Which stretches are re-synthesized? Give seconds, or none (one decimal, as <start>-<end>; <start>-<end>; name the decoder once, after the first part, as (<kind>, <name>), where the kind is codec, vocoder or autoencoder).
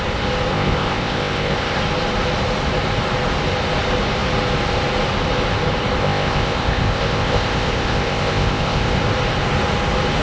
0.5-1.8 (codec, ZipCodec); 6.0-9.0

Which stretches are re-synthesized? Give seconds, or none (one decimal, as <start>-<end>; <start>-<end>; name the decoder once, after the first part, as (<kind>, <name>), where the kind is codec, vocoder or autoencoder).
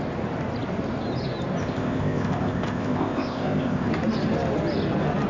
1.6-3.9 (codec, ZipCodec)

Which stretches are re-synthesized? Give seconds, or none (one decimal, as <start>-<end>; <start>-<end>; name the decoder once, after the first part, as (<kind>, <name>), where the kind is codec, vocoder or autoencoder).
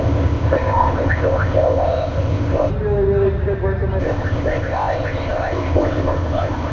0.0-2.7 (codec, ZipCodec); 4.0-6.7